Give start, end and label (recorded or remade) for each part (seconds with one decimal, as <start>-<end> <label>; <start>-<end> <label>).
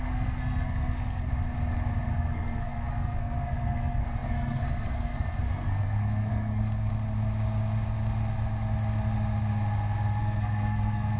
0.0-1.3 remade; 1.3-2.1 recorded; 2.1-6.9 remade; 6.9-10.2 recorded; 10.2-11.2 remade